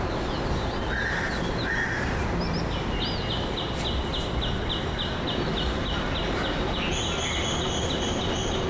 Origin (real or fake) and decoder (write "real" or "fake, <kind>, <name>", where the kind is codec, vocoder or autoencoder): real